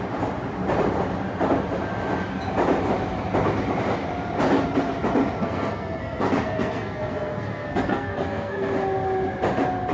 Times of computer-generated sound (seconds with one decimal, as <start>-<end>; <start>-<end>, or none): 5.4-8.7